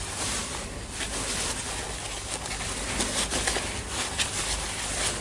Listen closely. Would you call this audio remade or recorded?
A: recorded